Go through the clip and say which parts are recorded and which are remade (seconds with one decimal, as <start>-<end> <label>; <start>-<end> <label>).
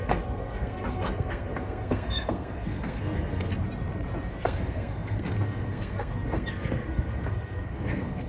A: 0.0-3.5 remade; 3.5-4.3 recorded; 4.3-8.3 remade